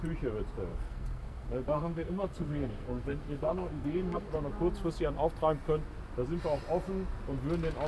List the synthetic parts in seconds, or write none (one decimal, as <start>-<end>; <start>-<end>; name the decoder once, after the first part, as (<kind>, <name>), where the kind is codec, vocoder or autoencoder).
0.7-4.3 (codec, SNAC)